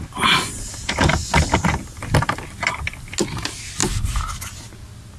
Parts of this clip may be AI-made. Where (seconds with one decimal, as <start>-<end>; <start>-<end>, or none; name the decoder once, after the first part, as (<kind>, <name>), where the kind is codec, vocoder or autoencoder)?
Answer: none